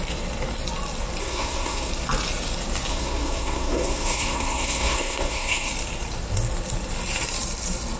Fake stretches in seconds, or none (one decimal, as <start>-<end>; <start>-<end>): 1.2-1.9; 2.9-5.7